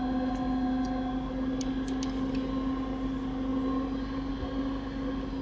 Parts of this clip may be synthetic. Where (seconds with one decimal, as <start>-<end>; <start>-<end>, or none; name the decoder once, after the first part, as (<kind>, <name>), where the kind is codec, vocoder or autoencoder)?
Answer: none